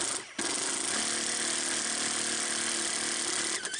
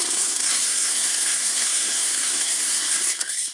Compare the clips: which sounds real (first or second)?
first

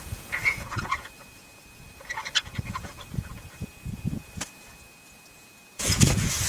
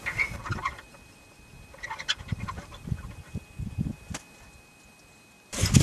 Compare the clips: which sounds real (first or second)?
second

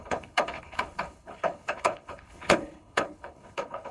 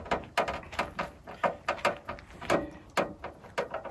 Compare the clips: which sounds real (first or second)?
second